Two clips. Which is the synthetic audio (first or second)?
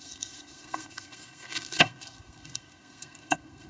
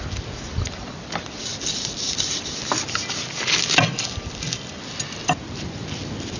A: first